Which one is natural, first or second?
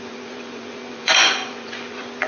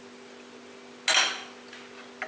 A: second